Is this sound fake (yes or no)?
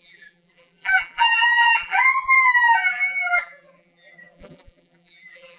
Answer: yes